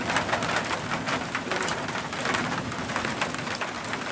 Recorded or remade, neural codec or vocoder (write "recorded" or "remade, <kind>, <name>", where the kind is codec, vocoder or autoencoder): recorded